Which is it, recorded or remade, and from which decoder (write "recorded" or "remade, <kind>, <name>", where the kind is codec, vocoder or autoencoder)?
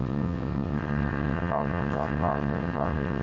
remade, vocoder, WaveNeXt